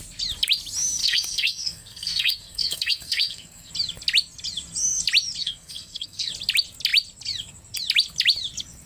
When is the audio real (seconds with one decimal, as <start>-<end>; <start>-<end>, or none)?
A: 0.0-1.0; 3.7-5.4; 6.3-8.9